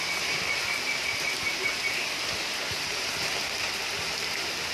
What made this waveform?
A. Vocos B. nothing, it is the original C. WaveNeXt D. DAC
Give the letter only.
B